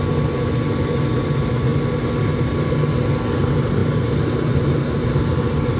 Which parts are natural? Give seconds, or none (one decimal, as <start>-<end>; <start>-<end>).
0.0-5.8